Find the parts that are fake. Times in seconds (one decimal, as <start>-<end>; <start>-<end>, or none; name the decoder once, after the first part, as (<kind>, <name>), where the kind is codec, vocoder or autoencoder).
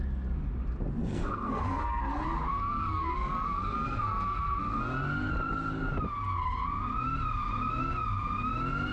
1.0-2.0 (codec, SNAC); 2.5-4.8